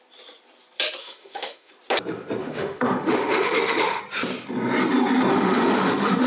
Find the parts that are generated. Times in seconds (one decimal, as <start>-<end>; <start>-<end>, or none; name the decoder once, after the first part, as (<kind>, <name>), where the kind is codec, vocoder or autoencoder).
1.0-1.7 (autoencoder, DAC-VAE); 2.4-4.0; 5.3-6.3